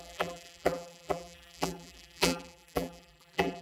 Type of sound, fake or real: fake